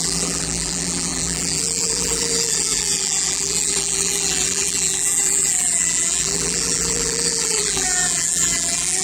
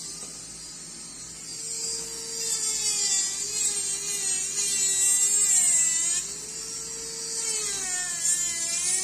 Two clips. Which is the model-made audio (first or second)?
first